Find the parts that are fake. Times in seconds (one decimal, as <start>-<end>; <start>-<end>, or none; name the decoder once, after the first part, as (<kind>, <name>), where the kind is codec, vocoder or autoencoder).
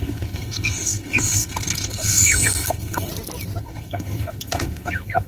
0.0-3.1 (codec, SNAC); 3.6-5.3